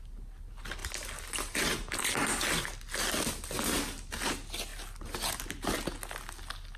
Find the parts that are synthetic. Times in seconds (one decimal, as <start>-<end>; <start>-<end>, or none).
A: none